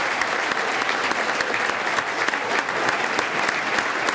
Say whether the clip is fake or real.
real